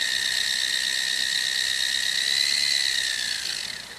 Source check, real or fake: real